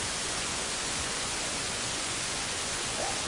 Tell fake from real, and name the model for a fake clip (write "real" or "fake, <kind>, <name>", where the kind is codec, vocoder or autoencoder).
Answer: fake, vocoder, Vocos